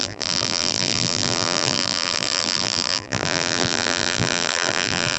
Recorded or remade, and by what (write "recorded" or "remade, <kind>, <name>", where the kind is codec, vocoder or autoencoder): remade, vocoder, BigVGAN v2